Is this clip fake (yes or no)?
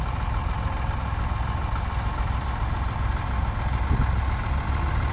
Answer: no